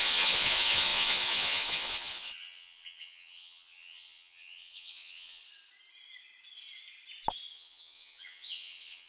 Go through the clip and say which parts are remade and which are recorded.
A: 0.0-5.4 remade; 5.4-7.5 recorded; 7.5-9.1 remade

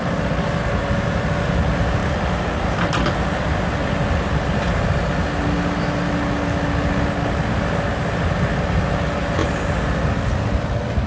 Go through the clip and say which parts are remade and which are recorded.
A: 0.0-11.1 recorded

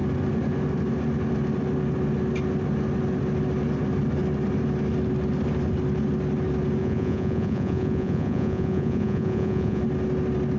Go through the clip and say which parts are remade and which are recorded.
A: 0.0-6.8 recorded; 6.8-9.8 remade; 9.8-10.6 recorded

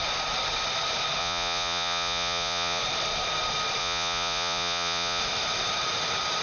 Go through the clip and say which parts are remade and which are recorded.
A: 0.0-1.2 recorded; 1.2-2.8 remade; 2.8-3.8 recorded; 3.8-5.2 remade; 5.2-6.4 recorded